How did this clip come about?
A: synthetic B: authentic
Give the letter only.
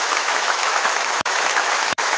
A